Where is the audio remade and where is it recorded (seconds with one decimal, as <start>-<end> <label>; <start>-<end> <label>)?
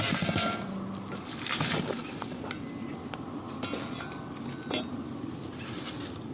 0.0-6.3 recorded